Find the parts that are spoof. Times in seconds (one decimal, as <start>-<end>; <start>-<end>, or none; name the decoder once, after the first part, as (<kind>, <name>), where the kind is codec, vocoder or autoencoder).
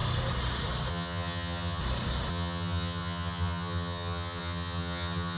0.9-1.8 (vocoder, HiFi-GAN); 2.3-5.4